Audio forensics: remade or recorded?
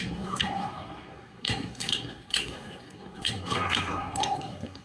remade